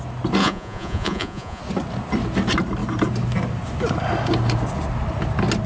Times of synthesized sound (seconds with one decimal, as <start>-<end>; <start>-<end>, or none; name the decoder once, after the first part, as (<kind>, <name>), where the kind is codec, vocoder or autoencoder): 0.4-1.6 (vocoder, Vocos)